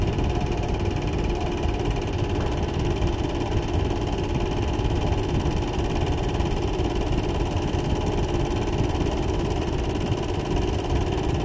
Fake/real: real